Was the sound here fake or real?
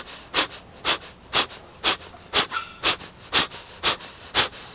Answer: real